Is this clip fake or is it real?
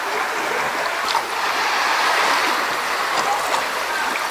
real